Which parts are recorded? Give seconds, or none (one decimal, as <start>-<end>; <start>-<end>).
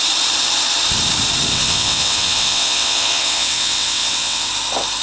0.0-1.5; 4.5-5.0